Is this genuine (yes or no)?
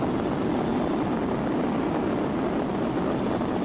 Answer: yes